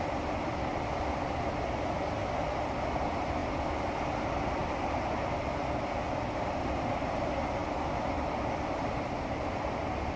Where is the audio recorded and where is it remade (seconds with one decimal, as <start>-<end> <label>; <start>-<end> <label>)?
0.0-10.2 recorded